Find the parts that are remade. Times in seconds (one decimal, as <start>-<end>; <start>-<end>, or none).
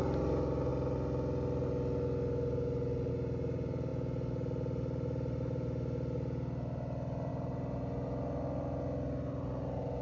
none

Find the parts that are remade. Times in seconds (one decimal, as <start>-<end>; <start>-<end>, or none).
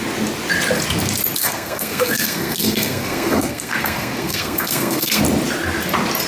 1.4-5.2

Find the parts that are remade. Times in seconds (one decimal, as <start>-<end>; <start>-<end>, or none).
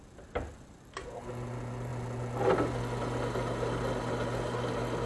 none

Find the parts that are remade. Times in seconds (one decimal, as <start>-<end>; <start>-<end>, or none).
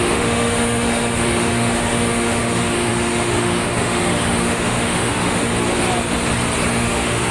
0.0-5.5; 6.7-7.3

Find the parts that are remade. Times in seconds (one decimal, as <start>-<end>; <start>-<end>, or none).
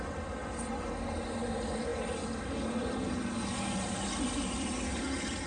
none